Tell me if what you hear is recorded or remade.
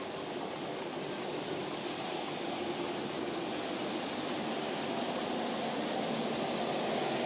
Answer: recorded